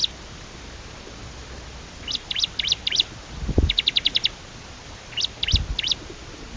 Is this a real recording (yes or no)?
yes